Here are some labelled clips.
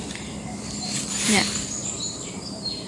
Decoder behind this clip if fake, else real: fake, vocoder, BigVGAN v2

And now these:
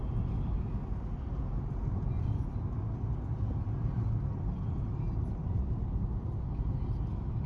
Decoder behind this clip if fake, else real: real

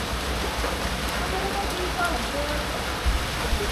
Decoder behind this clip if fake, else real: real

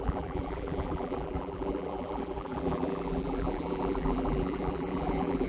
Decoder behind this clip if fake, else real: fake, vocoder, BigVGAN v2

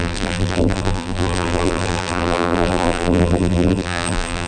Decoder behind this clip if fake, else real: fake, vocoder, BigVGAN v2